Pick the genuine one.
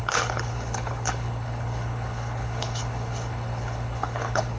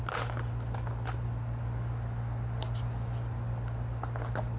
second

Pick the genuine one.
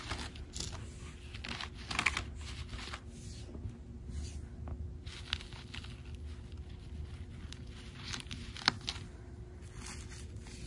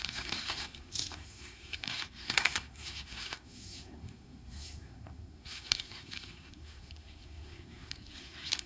first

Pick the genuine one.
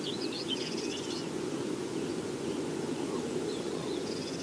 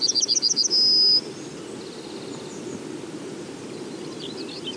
second